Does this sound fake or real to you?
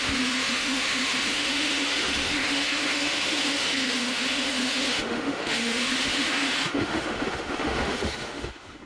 fake